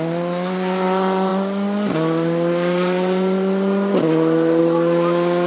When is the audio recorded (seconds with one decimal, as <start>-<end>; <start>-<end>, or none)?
0.0-5.5